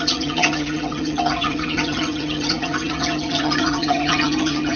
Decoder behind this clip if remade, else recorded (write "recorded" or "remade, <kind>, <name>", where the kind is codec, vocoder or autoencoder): remade, vocoder, HiFi-GAN